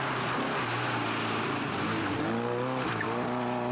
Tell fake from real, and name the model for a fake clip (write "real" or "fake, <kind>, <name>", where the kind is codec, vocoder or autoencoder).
real